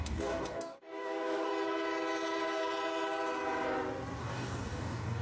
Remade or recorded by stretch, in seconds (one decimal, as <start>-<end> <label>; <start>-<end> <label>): 0.0-1.5 remade; 1.5-4.2 recorded; 4.2-5.2 remade